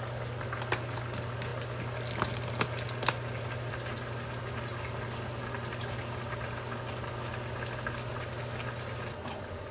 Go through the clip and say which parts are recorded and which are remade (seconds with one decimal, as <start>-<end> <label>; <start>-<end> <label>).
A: 0.0-9.7 recorded